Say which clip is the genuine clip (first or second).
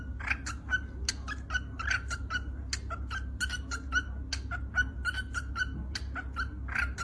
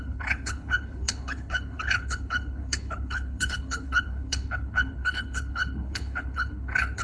first